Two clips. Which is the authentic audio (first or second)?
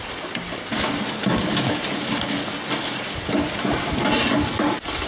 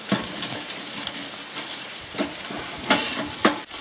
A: first